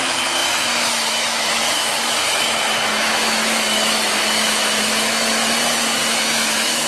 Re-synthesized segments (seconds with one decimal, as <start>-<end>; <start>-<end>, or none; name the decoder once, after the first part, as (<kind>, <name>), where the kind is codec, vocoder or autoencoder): 0.0-5.4 (autoencoder, DAC-VAE); 6.1-6.9